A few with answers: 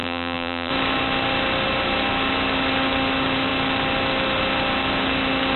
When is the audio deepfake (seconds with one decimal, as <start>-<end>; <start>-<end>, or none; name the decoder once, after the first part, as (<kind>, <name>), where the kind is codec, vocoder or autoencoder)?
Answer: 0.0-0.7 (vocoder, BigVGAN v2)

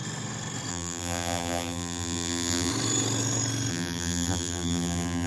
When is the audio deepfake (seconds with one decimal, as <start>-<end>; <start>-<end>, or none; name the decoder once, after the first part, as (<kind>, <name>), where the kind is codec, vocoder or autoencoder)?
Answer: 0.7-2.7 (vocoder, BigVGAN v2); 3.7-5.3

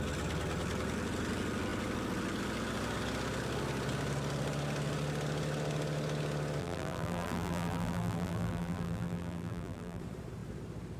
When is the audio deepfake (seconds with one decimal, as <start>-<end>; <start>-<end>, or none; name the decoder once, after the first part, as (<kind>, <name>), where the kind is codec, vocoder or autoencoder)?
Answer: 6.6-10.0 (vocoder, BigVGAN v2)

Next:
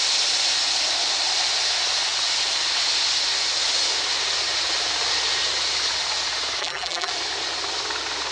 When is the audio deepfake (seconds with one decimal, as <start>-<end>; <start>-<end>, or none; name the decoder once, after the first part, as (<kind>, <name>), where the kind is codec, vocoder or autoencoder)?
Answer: 6.6-7.1 (vocoder, BigVGAN v2)

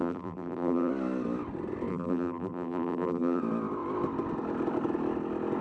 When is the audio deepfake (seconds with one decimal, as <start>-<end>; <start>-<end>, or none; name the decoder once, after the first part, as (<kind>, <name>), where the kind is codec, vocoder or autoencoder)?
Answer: 0.0-0.9 (vocoder, BigVGAN v2); 1.9-3.4